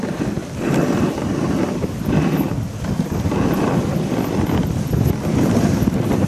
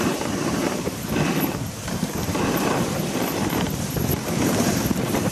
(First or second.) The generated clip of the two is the second